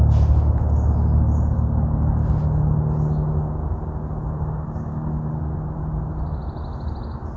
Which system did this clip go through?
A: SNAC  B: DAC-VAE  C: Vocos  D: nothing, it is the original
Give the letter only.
D